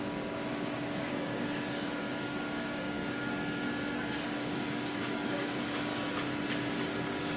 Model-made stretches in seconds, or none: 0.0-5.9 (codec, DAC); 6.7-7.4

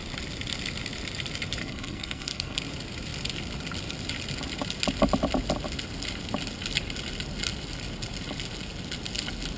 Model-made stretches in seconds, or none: 1.6-2.6 (codec, SNAC)

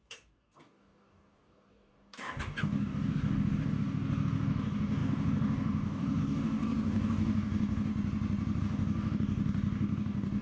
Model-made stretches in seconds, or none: 0.0-7.9 (codec, DAC); 8.6-10.4

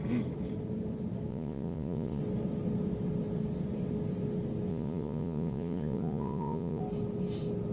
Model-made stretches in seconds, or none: 1.3-2.2 (vocoder, Vocos); 4.7-6.8

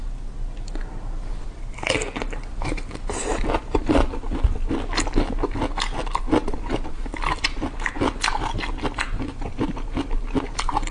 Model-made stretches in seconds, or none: none

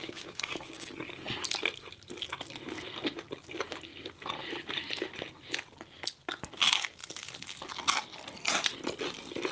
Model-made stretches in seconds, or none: 0.0-0.9 (codec, DAC)

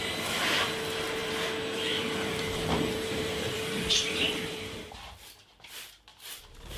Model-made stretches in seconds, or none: 1.2-4.9 (vocoder, BigVGAN v2)